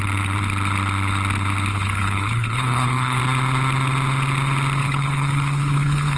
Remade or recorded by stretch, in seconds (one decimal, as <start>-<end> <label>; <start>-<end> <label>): 0.0-1.7 recorded; 1.7-3.2 remade; 3.2-4.8 recorded; 4.8-6.2 remade